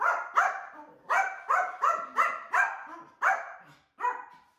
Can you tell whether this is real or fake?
real